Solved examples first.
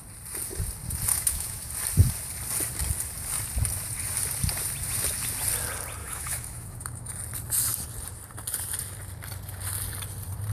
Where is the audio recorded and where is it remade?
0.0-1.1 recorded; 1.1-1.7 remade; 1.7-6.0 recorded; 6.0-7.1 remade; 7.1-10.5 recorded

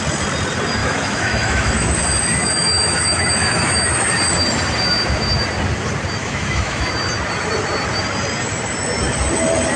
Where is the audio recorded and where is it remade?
0.0-0.8 recorded; 0.8-1.7 remade; 1.7-2.4 recorded; 2.4-4.1 remade; 4.1-6.2 recorded; 6.2-6.9 remade; 6.9-9.8 recorded

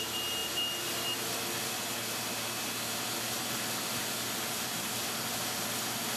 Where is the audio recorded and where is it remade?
0.0-6.2 recorded

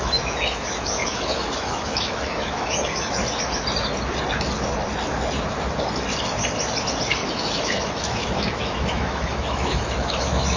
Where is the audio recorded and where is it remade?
0.0-3.2 remade; 3.2-7.3 recorded; 7.3-10.6 remade

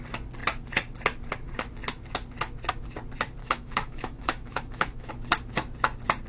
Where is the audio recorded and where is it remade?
0.0-3.4 recorded; 3.4-5.1 remade; 5.1-6.3 recorded

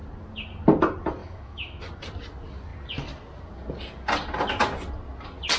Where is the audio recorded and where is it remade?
0.0-1.2 recorded; 1.2-1.8 remade; 1.8-5.6 recorded